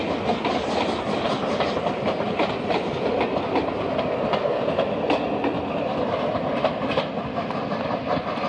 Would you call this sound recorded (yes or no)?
yes